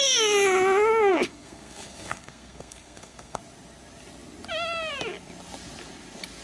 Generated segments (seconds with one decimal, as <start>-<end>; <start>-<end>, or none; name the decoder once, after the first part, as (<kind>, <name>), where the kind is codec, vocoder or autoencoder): 1.1-3.4 (codec, SNAC)